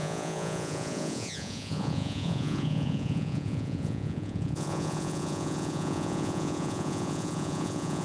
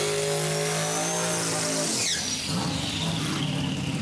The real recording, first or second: second